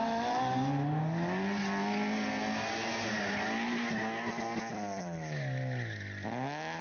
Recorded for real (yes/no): yes